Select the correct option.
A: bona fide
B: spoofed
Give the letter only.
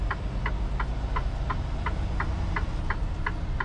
A